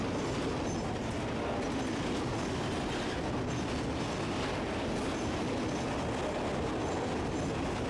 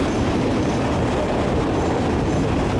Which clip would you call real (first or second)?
first